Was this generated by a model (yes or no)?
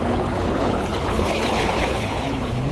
yes